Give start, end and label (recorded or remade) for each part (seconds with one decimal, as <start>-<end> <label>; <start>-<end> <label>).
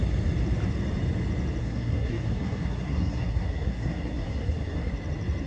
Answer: 0.0-1.6 recorded; 1.6-4.9 remade; 4.9-5.5 recorded